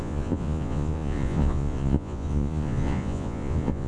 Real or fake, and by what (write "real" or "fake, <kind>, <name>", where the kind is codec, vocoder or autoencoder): fake, vocoder, Vocos